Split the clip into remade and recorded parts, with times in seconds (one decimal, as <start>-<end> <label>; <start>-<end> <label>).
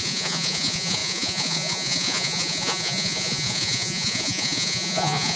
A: 0.0-5.4 remade